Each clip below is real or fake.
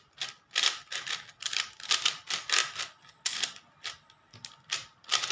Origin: real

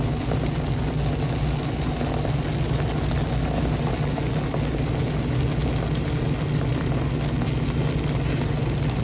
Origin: real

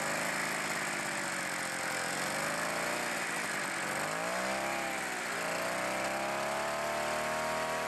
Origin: real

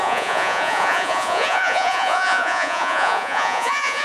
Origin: fake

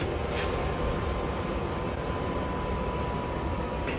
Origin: real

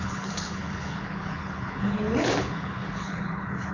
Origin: fake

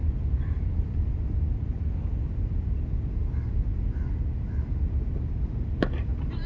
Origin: real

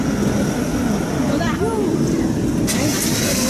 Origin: real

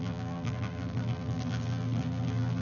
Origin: fake